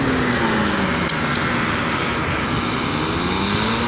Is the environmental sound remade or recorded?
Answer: recorded